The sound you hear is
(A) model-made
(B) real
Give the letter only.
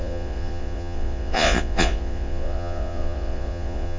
A